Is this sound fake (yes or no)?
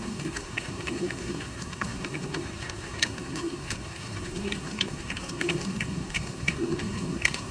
yes